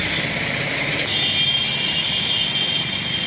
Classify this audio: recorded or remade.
recorded